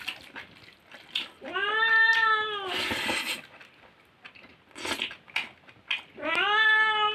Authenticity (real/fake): real